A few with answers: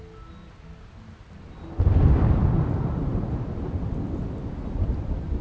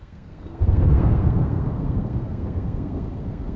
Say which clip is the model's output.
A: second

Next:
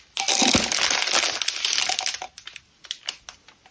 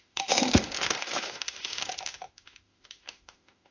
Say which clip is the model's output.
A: second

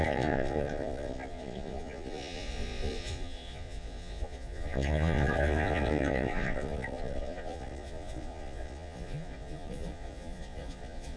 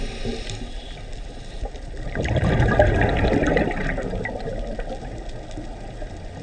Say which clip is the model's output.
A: first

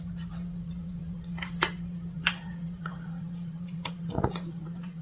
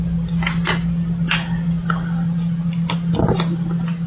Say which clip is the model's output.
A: first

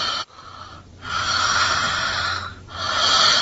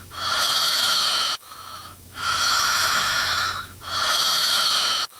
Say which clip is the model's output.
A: second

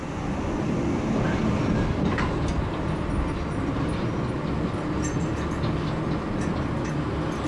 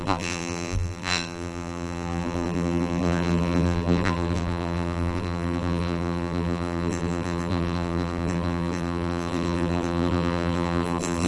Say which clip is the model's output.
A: second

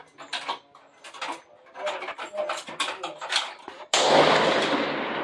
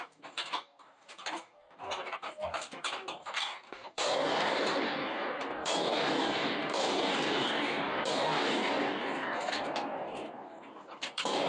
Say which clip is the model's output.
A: second